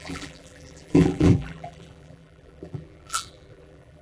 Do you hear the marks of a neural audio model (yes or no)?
yes